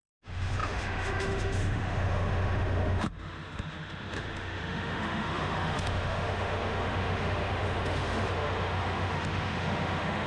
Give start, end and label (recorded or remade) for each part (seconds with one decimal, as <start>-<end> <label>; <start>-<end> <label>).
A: 0.0-10.3 remade